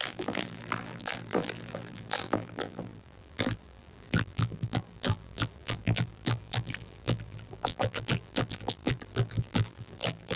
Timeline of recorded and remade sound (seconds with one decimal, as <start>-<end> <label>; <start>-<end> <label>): 0.0-10.4 remade